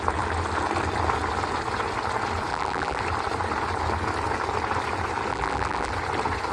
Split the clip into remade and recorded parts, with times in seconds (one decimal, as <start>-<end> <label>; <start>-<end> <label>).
0.0-2.5 recorded; 2.5-3.0 remade; 3.0-5.3 recorded; 5.3-5.9 remade; 5.9-6.5 recorded